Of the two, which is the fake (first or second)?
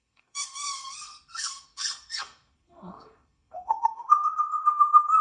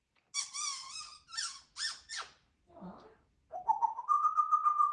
first